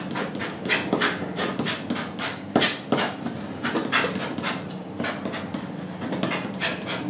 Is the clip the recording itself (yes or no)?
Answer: yes